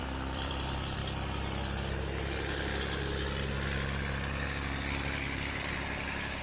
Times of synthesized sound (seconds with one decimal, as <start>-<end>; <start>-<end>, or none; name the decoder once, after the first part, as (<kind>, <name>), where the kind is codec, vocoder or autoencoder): 0.0-1.0 (vocoder, BigVGAN v2); 4.8-6.4

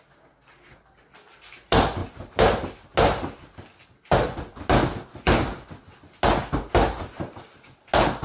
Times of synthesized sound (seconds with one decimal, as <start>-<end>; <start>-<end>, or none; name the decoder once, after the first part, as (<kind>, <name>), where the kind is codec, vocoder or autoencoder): 2.0-2.9 (vocoder, BigVGAN v2)